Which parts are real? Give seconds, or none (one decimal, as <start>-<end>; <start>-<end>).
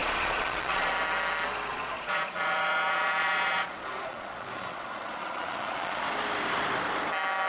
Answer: 0.9-1.7; 6.0-7.5